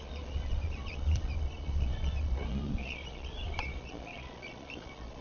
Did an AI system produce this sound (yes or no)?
yes